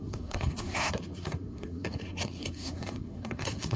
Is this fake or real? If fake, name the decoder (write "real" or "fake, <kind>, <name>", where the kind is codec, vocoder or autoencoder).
fake, codec, SNAC